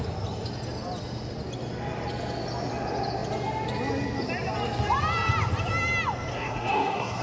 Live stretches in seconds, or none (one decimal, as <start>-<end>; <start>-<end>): 0.0-6.3